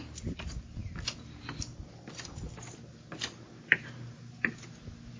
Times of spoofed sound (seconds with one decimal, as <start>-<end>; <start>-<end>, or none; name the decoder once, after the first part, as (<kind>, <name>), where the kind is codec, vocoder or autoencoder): none